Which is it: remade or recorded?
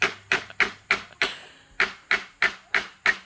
recorded